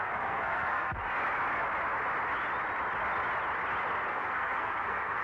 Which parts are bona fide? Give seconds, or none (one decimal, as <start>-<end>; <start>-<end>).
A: 1.0-4.1